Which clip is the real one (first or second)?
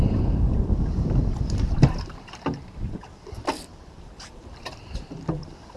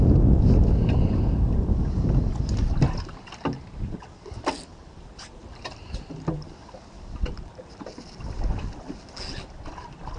second